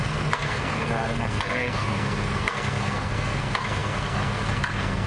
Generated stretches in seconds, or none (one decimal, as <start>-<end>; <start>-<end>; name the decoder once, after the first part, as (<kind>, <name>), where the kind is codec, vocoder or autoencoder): 0.0-5.1 (codec, SNAC)